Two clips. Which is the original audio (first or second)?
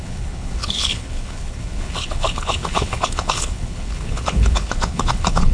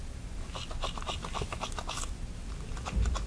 second